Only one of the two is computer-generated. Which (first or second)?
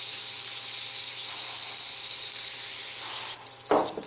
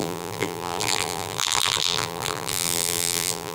second